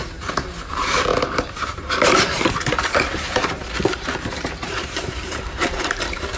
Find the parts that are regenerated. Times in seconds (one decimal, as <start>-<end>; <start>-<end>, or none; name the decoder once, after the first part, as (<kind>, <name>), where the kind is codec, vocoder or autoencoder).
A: 0.7-3.4 (vocoder, BigVGAN v2); 3.9-6.4